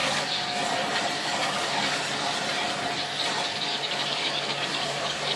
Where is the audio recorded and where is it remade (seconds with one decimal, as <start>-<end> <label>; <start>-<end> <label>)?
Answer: 0.0-0.6 remade; 0.6-1.2 recorded; 1.2-2.0 remade; 2.0-3.7 recorded; 3.7-5.4 remade